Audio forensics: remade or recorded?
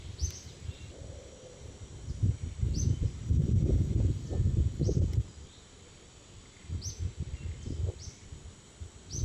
recorded